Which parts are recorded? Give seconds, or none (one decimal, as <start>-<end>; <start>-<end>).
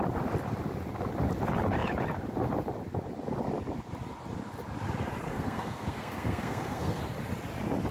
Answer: 0.0-5.3; 7.0-7.9